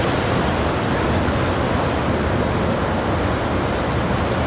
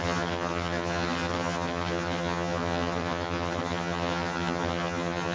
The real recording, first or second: first